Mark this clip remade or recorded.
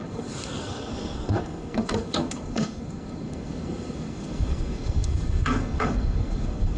remade